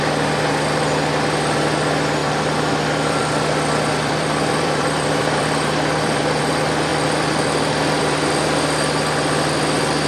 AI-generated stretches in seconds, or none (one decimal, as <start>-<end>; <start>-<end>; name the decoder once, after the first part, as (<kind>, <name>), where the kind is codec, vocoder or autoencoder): 2.2-6.4 (vocoder, BigVGAN v2); 6.9-8.3